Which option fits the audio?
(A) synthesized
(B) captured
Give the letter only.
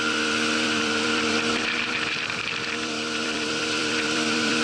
A